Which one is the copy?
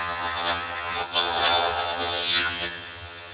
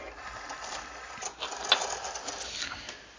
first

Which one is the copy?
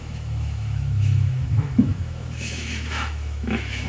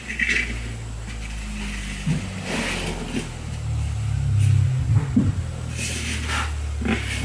first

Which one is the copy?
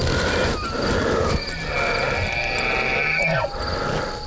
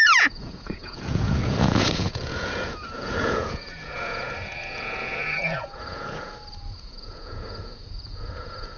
second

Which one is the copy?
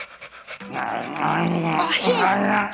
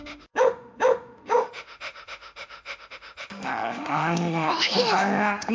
second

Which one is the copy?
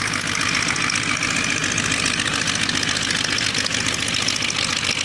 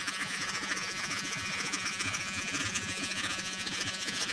second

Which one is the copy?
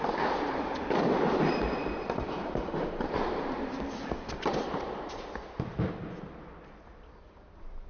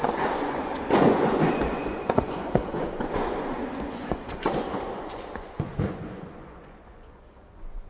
second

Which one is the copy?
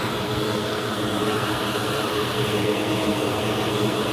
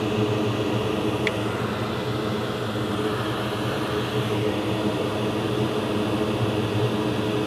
first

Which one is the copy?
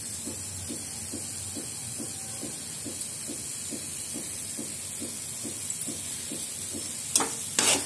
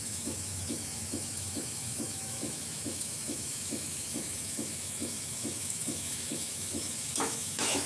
second